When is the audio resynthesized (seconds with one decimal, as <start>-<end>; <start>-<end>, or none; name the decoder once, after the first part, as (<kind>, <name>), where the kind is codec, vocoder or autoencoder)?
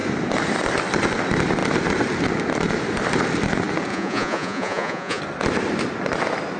3.9-5.2 (vocoder, Vocos)